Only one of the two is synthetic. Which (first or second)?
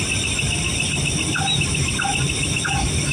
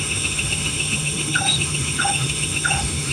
second